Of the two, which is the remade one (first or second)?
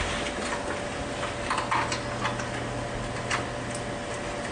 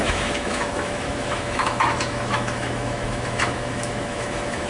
second